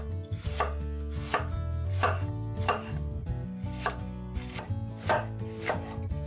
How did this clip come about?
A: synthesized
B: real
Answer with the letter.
B